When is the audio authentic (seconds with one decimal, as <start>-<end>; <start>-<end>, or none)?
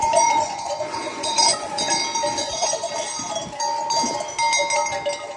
1.9-2.4; 2.9-5.4